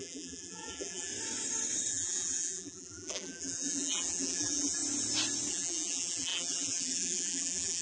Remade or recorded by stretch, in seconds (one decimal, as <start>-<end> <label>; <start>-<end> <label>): 0.0-1.1 remade; 1.1-1.9 recorded; 1.9-4.8 remade; 4.8-5.5 recorded; 5.5-7.8 remade